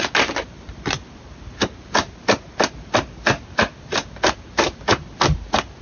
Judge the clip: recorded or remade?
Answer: recorded